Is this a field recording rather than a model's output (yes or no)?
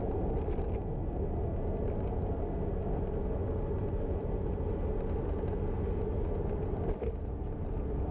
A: yes